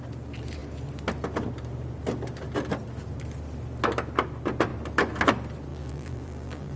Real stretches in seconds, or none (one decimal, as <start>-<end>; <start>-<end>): 0.0-5.7